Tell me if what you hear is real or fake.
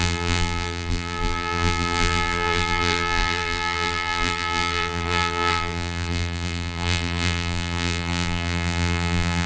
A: fake